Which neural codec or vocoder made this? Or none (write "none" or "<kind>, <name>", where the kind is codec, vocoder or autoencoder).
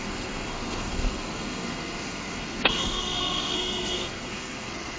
codec, SNAC